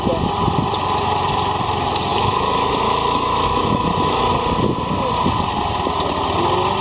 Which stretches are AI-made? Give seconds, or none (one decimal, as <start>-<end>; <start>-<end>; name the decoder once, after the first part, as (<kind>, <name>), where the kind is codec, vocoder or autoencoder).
2.1-4.3 (autoencoder, DAC-VAE)